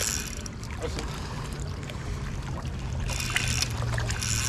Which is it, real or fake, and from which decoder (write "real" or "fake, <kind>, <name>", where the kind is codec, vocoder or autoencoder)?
real